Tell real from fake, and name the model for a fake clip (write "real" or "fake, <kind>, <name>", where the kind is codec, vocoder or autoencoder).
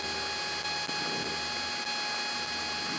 real